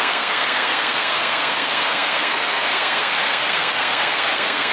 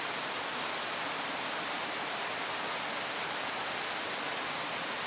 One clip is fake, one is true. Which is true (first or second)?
second